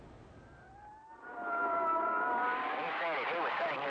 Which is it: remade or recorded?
recorded